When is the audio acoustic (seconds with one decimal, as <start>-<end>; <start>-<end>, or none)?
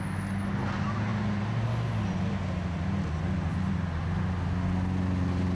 0.0-5.6